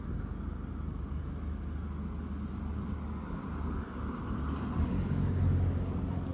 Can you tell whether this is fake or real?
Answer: real